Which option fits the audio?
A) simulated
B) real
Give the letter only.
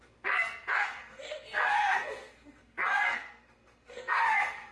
A